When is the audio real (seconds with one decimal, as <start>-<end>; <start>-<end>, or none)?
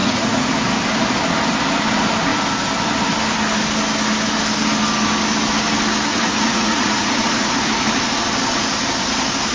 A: 0.5-6.1; 7.5-9.5